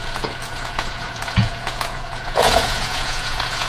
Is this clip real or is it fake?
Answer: fake